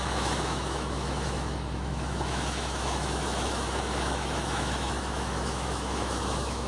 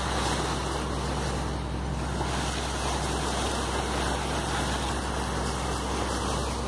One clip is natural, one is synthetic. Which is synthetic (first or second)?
first